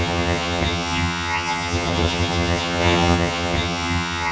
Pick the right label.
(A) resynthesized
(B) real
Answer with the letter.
A